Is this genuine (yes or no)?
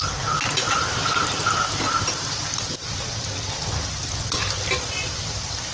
yes